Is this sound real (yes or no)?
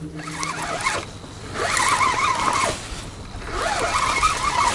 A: yes